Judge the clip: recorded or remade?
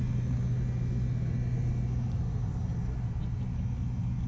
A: recorded